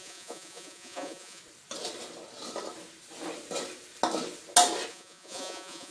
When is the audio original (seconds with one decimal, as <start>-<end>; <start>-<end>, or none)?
1.4-4.9